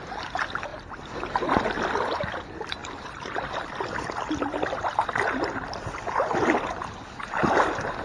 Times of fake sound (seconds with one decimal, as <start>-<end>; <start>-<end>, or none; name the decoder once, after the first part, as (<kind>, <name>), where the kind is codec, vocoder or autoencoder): 0.7-1.3 (vocoder, BigVGAN v2); 2.8-5.7